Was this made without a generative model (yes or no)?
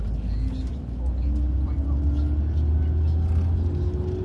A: yes